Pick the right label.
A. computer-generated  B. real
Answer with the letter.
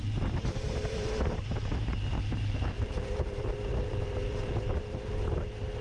A